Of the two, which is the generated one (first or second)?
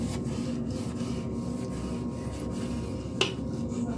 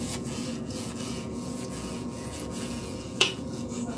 second